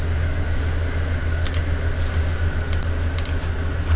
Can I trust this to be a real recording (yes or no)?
yes